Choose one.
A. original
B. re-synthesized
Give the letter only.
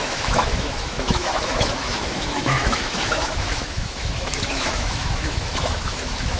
B